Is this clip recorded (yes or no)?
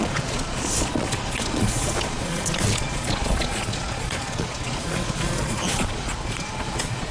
no